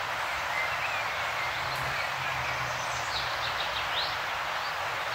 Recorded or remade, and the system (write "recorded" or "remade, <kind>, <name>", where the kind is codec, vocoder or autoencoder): recorded